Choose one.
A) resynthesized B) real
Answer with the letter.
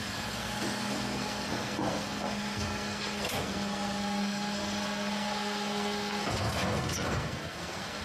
A